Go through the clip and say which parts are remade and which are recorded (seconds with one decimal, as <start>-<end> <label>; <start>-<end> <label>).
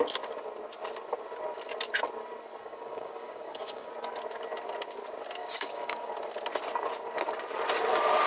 0.0-2.6 recorded; 2.6-3.9 remade; 3.9-5.4 recorded; 5.4-6.1 remade; 6.1-8.3 recorded